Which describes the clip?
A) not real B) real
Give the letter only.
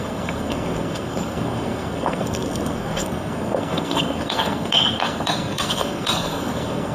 A